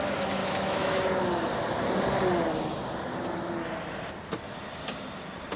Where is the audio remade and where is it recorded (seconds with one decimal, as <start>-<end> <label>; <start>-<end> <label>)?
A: 0.0-0.4 recorded; 0.4-1.0 remade; 1.0-5.6 recorded